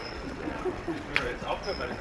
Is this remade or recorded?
remade